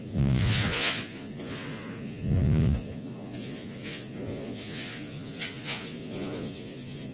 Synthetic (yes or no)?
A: yes